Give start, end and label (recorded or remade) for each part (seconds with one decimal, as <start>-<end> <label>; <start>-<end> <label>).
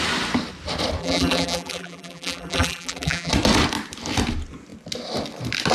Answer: 0.0-1.0 recorded; 1.0-3.3 remade; 3.3-5.7 recorded